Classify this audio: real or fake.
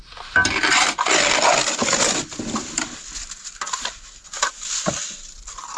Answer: real